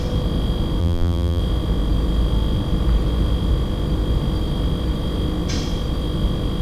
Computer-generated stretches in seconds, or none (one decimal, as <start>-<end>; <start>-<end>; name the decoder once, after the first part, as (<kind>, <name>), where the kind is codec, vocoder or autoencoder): 0.8-1.4 (vocoder, BigVGAN v2)